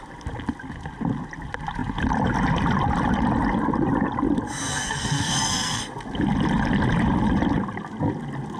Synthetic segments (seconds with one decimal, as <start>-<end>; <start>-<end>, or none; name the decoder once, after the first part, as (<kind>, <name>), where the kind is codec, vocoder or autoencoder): 4.7-5.8 (codec, SNAC)